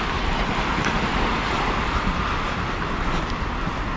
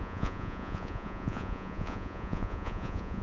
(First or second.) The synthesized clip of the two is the second